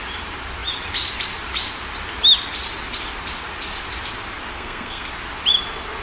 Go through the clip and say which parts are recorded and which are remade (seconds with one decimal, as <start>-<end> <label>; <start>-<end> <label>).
0.0-4.5 recorded; 4.5-5.1 remade; 5.1-6.0 recorded